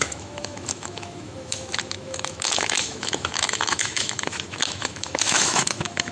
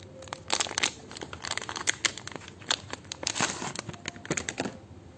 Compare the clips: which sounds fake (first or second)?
first